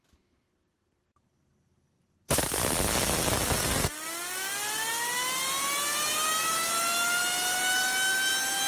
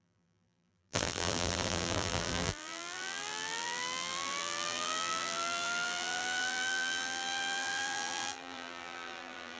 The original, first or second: first